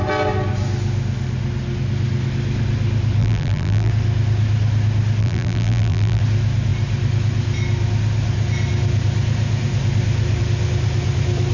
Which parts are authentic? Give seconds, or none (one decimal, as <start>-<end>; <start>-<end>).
0.0-3.2; 3.9-5.2; 6.2-11.5